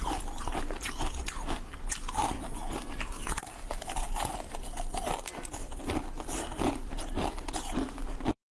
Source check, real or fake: fake